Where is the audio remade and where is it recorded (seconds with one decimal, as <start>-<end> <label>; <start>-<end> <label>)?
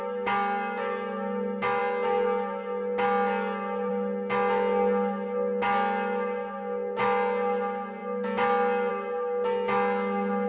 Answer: 0.0-10.5 recorded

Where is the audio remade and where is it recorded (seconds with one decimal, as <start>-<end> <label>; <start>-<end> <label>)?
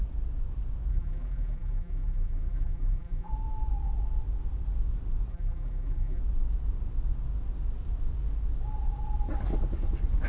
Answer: 0.0-0.9 recorded; 0.9-3.3 remade; 3.3-5.3 recorded; 5.3-6.2 remade; 6.2-10.3 recorded